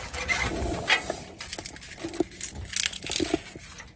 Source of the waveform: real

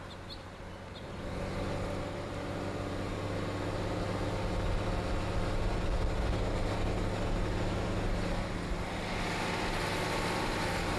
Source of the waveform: real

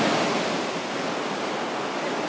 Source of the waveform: real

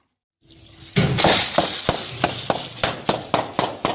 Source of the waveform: real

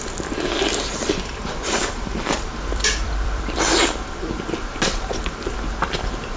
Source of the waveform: fake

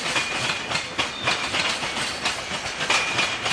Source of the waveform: real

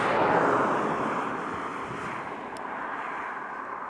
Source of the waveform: real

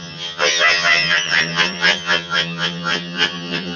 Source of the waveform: fake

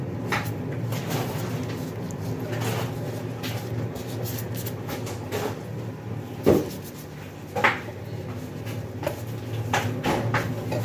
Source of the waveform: real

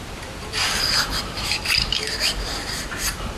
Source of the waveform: fake